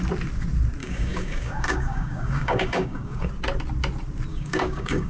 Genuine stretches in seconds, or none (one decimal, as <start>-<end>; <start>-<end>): 0.0-0.8; 3.3-4.3